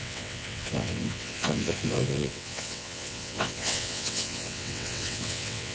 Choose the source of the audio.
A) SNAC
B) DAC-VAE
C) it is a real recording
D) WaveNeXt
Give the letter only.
D